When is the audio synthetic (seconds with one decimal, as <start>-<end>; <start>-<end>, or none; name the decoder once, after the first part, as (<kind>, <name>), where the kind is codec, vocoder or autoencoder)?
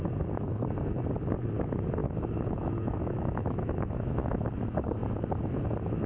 2.0-4.5 (autoencoder, DAC-VAE)